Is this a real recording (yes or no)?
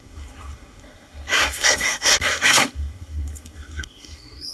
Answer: no